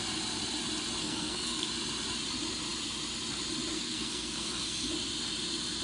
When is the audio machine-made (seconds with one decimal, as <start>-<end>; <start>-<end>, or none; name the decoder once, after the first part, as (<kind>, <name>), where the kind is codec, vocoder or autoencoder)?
1.0-1.7 (codec, SNAC); 3.7-4.9